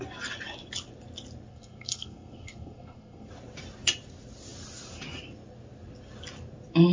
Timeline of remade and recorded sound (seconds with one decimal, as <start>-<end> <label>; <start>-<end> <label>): 0.0-1.5 recorded; 1.5-3.3 remade; 3.3-6.9 recorded